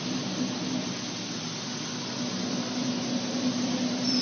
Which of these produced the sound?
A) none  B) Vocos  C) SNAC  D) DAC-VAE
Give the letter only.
A